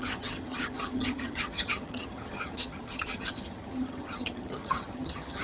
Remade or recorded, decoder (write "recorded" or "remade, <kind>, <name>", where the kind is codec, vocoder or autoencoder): remade, vocoder, HiFi-GAN